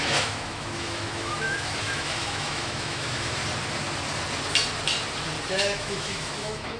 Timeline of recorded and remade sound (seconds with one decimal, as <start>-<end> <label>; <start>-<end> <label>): 0.0-3.4 remade; 3.4-5.5 recorded; 5.5-6.8 remade